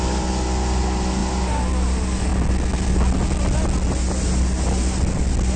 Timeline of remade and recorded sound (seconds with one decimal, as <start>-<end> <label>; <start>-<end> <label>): 0.0-5.6 recorded